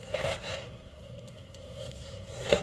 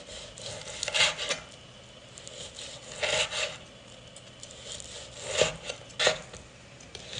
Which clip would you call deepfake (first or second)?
first